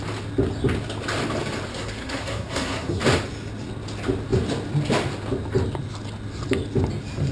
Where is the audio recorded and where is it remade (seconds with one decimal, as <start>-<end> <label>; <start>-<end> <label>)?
0.0-1.7 recorded; 1.7-3.0 remade; 3.0-7.3 recorded